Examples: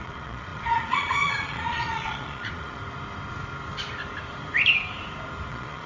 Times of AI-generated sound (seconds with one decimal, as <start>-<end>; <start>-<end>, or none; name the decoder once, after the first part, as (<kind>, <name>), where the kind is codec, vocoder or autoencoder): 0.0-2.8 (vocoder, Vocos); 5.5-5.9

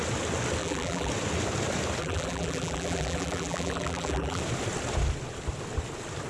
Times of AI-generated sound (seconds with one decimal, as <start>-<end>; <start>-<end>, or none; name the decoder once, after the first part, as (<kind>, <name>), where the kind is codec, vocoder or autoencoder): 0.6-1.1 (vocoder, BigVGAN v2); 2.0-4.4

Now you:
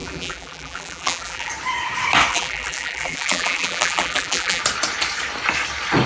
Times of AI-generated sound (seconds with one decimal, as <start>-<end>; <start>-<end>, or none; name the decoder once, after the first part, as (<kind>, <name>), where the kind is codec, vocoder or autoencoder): 0.0-1.5 (vocoder, BigVGAN v2); 2.3-4.6

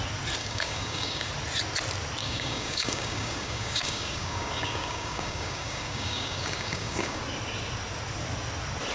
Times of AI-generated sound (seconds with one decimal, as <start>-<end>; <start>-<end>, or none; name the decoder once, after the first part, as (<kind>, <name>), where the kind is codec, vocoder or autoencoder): 0.4-1.3 (codec, DAC); 2.2-7.2

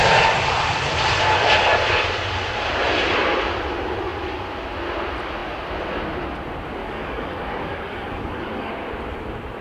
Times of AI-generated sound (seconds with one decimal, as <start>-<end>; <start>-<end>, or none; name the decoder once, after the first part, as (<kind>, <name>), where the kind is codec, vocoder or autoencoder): 6.8-8.7 (codec, DAC)

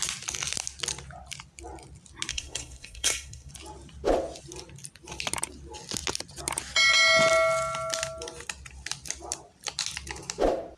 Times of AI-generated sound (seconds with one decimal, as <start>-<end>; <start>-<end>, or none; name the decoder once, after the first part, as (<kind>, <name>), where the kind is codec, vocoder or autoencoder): 2.3-3.5 (codec, SNAC)

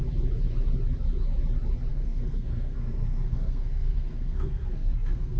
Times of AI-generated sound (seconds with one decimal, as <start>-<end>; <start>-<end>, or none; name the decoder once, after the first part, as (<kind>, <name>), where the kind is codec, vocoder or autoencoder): 1.9-5.4 (codec, SNAC)

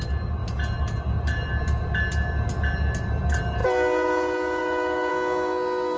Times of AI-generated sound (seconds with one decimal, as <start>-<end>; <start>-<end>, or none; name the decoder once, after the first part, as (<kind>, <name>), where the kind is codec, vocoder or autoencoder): 5.1-6.0 (codec, SNAC)